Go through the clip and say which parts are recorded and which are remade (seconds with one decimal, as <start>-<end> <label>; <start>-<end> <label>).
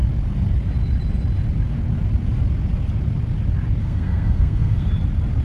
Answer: 0.0-3.8 recorded; 3.8-4.9 remade; 4.9-5.4 recorded